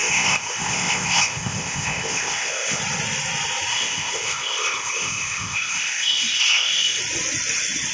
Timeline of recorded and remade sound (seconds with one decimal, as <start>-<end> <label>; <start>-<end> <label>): 0.0-2.8 remade; 2.8-3.7 recorded; 3.7-7.0 remade; 7.0-7.9 recorded